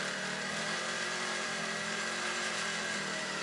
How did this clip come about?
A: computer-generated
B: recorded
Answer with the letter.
A